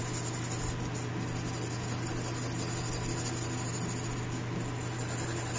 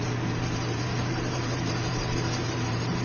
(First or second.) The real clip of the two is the first